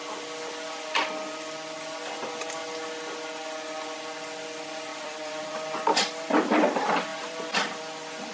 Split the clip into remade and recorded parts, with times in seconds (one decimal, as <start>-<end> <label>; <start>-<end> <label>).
0.0-4.9 recorded; 4.9-5.5 remade; 5.5-7.1 recorded; 7.1-7.8 remade; 7.8-8.3 recorded